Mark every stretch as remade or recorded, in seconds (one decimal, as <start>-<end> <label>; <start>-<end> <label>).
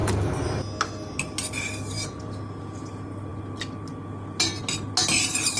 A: 0.0-5.6 recorded